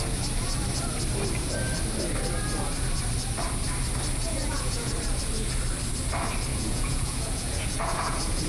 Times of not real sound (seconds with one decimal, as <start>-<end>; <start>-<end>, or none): 4.2-4.9; 6.5-8.5